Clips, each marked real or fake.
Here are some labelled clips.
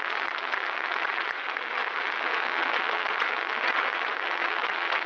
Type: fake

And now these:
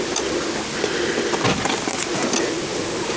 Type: real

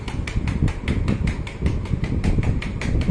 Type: real